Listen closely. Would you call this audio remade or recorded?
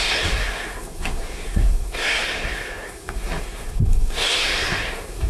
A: remade